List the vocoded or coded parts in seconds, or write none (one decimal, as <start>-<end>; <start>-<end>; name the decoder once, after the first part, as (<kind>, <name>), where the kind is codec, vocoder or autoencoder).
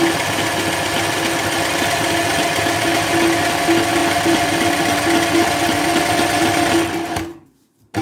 none